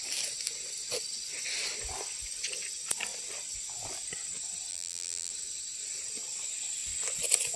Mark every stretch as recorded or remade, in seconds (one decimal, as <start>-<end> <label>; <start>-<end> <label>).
0.0-4.7 recorded; 4.7-5.3 remade; 5.3-7.6 recorded